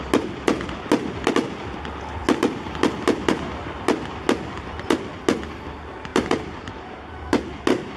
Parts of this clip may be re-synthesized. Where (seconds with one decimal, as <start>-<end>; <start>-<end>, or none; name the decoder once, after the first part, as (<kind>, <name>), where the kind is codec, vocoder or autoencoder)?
6.1-7.4 (vocoder, BigVGAN v2)